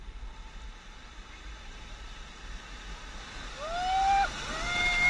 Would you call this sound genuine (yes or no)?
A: yes